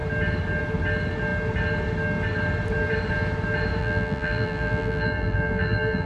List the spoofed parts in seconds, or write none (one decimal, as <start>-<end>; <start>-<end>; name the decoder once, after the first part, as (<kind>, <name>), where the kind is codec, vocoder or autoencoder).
3.8-6.1 (vocoder, BigVGAN v2)